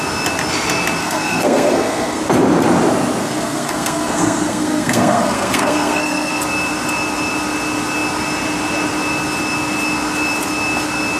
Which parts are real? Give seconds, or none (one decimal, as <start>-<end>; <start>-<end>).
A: 0.0-1.0; 2.2-3.2; 6.4-11.2